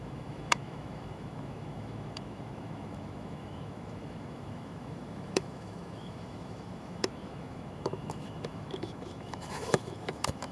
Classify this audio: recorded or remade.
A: remade